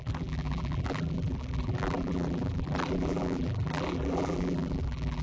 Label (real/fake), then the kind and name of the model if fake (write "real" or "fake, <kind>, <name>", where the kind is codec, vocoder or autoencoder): fake, vocoder, BigVGAN v2